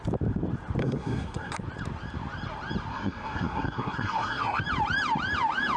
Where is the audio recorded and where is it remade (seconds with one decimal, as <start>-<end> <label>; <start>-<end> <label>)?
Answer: 0.0-0.8 recorded; 0.8-1.5 remade; 1.5-2.9 recorded; 2.9-4.6 remade; 4.6-5.8 recorded